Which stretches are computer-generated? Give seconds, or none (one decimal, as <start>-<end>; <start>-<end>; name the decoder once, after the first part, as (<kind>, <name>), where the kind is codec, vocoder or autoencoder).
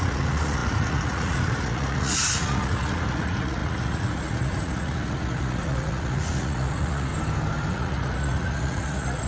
0.0-7.1 (vocoder, Vocos); 7.7-9.3